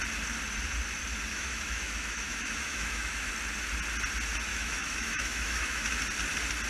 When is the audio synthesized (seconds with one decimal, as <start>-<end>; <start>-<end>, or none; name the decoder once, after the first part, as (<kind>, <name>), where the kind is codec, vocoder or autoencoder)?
1.3-3.3 (autoencoder, DAC-VAE); 4.5-6.0